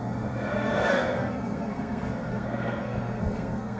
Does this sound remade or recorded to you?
remade